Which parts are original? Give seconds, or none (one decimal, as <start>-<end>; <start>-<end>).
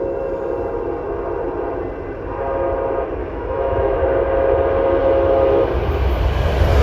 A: 0.0-3.2; 4.0-6.8